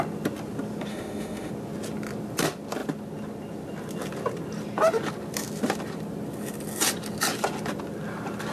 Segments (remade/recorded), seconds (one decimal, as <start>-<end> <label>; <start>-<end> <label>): 0.0-0.9 recorded; 0.9-1.5 remade; 1.5-8.5 recorded